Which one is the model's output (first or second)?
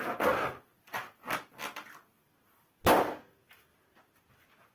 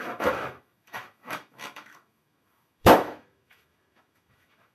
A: second